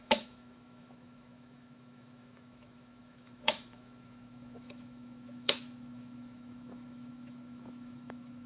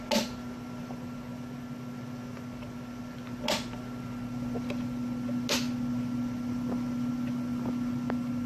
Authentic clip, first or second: second